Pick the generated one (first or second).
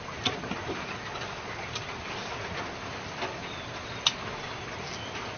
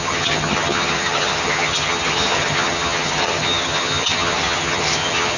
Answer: second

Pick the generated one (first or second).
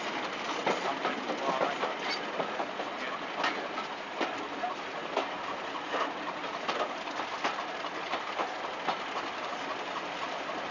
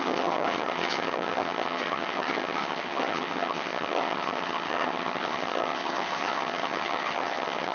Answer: second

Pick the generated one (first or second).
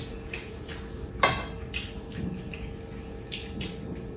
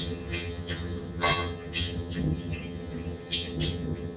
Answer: second